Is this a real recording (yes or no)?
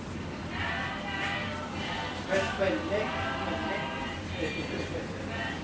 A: yes